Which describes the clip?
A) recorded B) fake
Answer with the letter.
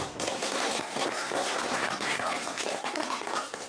B